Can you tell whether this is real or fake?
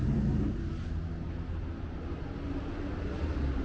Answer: real